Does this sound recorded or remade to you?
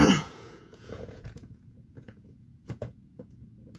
remade